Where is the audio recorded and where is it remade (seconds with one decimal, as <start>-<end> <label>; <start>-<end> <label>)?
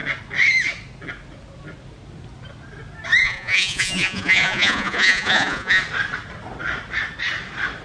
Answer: 0.0-3.2 recorded; 3.2-5.8 remade; 5.8-7.8 recorded